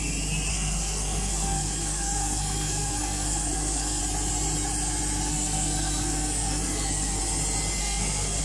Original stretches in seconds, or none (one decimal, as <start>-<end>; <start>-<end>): 0.0-0.5; 4.0-5.3; 7.2-7.8

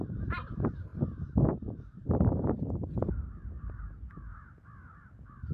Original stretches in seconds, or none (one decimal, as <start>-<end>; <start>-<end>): 0.9-1.5; 4.3-5.5